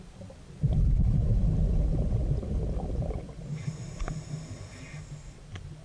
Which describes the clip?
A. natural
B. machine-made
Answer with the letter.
A